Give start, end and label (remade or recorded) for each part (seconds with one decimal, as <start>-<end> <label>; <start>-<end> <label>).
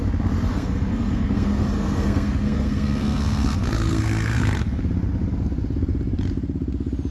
0.0-0.5 recorded; 0.5-4.8 remade; 4.8-7.1 recorded